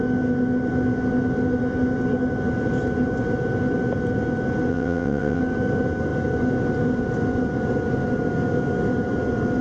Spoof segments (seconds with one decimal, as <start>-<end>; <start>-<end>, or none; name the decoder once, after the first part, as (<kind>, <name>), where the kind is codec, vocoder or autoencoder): 4.7-5.4 (vocoder, WaveNeXt)